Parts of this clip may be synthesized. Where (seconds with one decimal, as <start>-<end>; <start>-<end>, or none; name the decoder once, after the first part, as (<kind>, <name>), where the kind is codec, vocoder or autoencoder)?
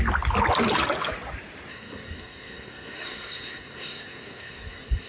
1.7-5.1 (codec, SNAC)